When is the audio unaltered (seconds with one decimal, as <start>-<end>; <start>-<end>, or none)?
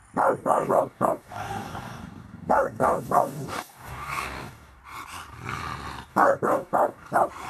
0.0-0.4; 4.8-6.1; 7.1-7.5